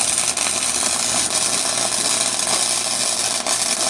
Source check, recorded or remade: recorded